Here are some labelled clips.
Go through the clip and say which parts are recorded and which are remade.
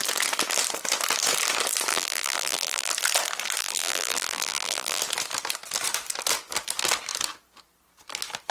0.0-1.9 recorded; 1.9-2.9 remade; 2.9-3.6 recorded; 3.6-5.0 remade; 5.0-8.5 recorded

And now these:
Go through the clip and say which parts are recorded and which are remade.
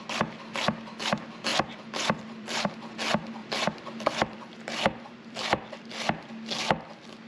0.0-1.5 recorded; 1.5-2.7 remade; 2.7-3.4 recorded; 3.4-5.9 remade; 5.9-7.3 recorded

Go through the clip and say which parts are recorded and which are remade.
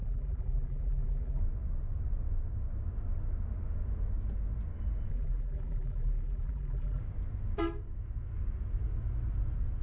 0.0-1.4 remade; 1.4-5.1 recorded; 5.1-7.0 remade; 7.0-9.8 recorded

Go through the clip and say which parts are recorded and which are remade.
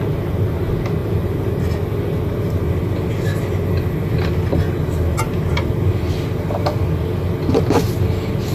0.0-1.0 recorded; 1.0-1.6 remade; 1.6-8.5 recorded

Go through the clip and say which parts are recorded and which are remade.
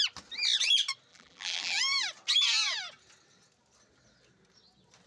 0.0-1.1 recorded; 1.1-1.8 remade; 1.8-5.1 recorded